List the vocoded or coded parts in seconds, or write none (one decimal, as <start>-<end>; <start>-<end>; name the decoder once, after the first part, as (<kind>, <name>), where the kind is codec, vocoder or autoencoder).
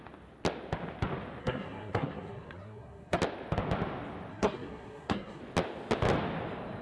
1.4-3.2 (codec, SNAC); 4.3-5.4